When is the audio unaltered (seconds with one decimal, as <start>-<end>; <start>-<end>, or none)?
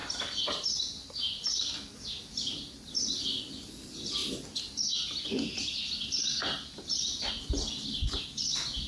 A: 0.0-8.9